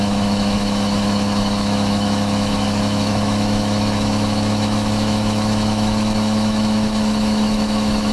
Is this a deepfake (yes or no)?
yes